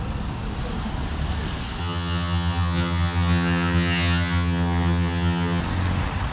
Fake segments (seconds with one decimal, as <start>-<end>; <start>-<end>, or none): 1.8-5.6